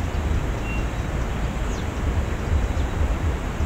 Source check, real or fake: real